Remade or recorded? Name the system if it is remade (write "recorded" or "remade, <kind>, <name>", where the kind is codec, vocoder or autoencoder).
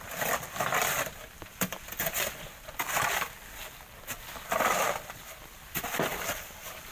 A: remade, vocoder, BigVGAN v2